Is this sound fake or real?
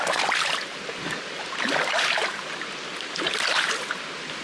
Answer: real